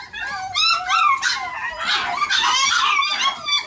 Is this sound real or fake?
real